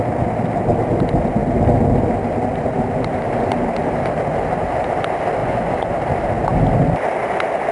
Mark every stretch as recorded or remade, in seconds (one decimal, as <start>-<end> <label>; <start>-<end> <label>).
0.0-5.4 recorded; 5.4-5.9 remade; 5.9-7.7 recorded